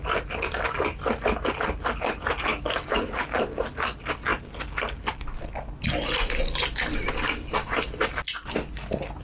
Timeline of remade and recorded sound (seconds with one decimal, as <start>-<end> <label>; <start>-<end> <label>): 0.0-2.5 recorded; 2.5-3.0 remade; 3.0-7.6 recorded; 7.6-8.2 remade; 8.2-9.2 recorded